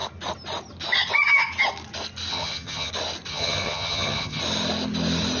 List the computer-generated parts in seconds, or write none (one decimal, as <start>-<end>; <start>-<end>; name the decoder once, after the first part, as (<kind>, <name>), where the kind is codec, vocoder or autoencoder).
2.3-2.9 (vocoder, HiFi-GAN); 3.3-4.4